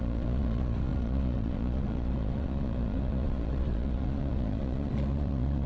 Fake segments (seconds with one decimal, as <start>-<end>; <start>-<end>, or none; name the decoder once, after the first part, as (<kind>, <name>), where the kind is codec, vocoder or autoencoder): 0.0-5.7 (vocoder, Vocos)